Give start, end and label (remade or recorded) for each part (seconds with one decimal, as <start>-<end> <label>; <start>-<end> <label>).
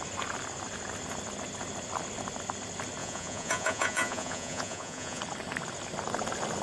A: 0.0-3.0 recorded; 3.0-5.2 remade; 5.2-6.6 recorded